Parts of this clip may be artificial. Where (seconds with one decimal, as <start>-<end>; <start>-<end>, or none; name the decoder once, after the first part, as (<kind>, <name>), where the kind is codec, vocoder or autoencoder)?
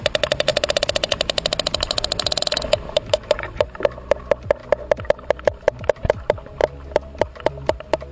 none